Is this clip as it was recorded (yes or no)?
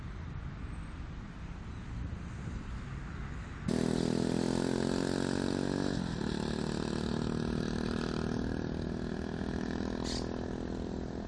yes